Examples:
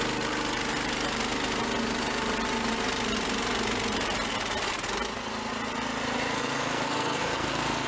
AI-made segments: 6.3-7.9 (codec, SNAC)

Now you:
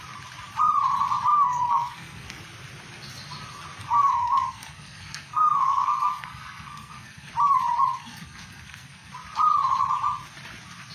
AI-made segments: 1.3-2.4 (codec, SNAC); 3.8-7.3; 7.9-9.1

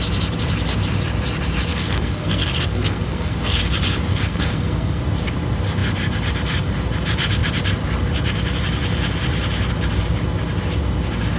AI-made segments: 1.7-3.6 (codec, SNAC); 4.1-5.0

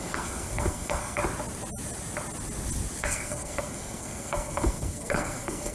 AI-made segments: 0.0-1.2 (codec, SNAC); 3.0-5.7

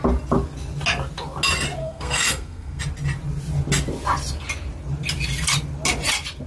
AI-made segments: 1.8-2.8 (codec, SNAC)

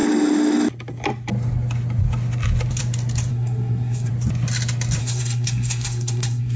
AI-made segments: 3.3-4.1 (codec, SNAC); 5.0-6.6

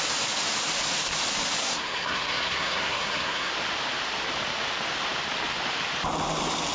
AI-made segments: 1.6-3.5 (codec, SNAC)

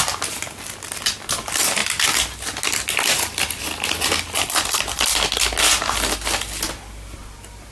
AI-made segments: none